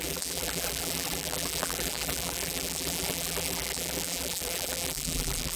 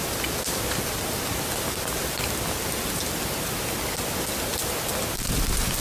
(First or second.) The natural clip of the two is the second